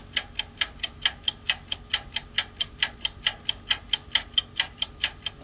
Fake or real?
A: real